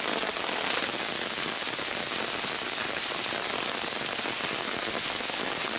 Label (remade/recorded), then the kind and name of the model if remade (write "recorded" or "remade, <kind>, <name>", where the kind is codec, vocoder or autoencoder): recorded